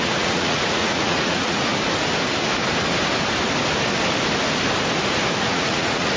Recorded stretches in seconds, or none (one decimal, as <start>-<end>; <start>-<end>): 1.7-5.4